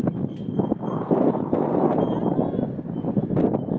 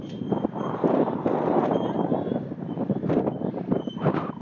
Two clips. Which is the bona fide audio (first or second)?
first